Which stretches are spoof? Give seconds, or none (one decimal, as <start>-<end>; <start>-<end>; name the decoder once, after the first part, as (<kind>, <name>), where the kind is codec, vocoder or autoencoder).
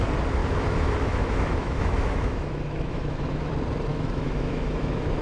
0.4-3.5 (autoencoder, DAC-VAE); 3.9-5.2